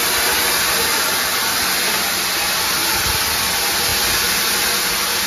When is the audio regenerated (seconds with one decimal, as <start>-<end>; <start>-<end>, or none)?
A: none